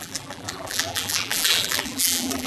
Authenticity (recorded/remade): remade